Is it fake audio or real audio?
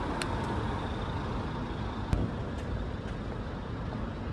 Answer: real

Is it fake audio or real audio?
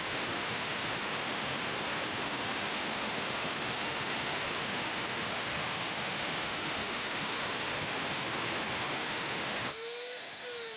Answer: fake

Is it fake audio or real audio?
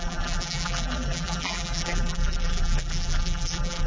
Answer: fake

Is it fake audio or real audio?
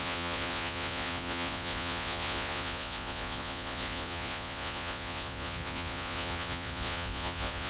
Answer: fake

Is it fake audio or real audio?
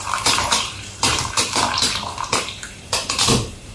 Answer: fake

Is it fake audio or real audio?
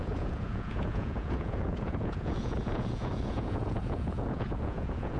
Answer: fake